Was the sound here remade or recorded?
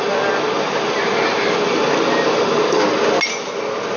recorded